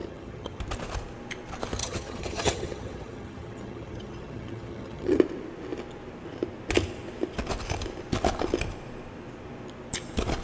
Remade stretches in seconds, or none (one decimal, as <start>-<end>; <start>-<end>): 0.0-0.6; 1.8-5.2